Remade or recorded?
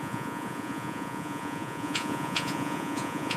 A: remade